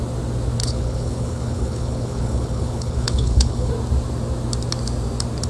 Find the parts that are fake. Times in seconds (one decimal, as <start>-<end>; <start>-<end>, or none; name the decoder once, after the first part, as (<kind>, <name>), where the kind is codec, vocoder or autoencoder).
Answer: 0.6-3.7 (codec, HILCodec)